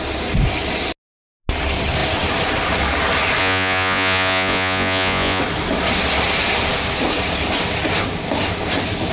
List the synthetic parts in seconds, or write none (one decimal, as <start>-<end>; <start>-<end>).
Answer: 3.4-5.4